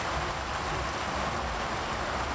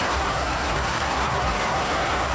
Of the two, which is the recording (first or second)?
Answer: first